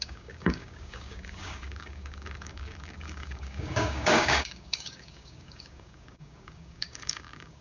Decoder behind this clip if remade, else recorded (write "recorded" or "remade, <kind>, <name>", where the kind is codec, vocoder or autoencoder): remade, codec, DAC